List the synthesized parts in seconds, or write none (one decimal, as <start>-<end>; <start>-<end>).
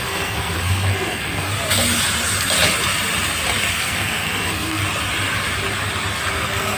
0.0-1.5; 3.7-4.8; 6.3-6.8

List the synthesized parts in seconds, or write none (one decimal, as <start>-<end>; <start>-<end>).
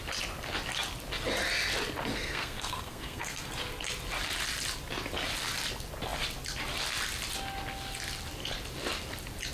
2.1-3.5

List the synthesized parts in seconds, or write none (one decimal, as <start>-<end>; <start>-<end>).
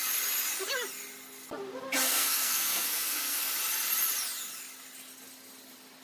2.0-3.5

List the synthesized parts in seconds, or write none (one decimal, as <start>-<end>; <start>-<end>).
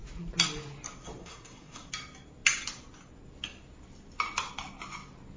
1.2-1.9